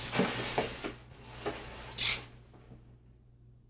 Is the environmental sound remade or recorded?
recorded